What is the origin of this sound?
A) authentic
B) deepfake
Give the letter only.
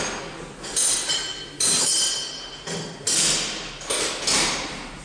A